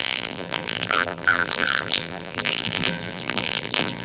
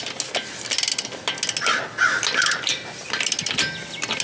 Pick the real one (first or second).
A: second